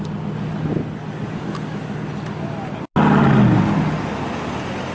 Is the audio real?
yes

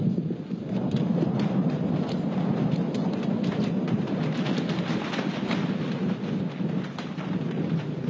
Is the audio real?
yes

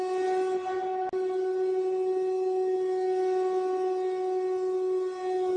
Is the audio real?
yes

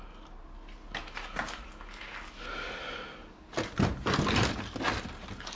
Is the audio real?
yes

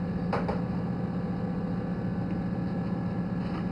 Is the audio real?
yes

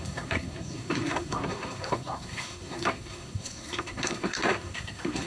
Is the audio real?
no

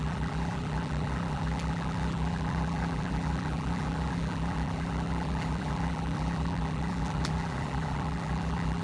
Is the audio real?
no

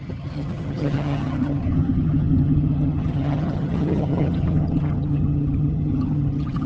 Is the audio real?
no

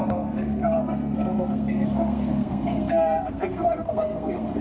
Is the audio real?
no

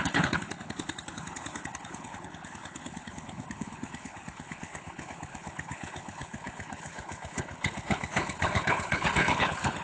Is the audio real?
no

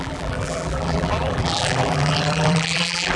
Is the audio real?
no